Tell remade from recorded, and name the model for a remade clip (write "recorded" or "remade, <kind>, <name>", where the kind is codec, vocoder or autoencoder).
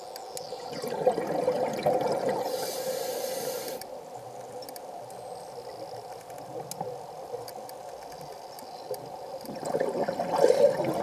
recorded